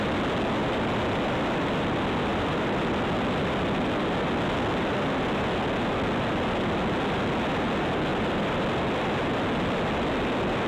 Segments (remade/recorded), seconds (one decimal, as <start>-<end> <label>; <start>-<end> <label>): 0.0-2.3 recorded; 2.3-2.9 remade; 2.9-8.1 recorded; 8.1-8.6 remade; 8.6-10.7 recorded